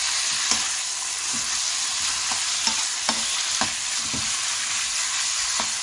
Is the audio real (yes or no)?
yes